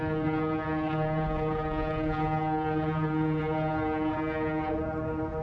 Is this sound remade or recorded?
remade